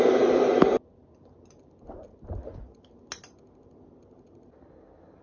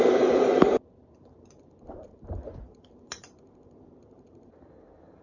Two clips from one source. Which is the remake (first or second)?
second